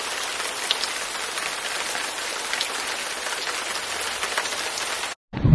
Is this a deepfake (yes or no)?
no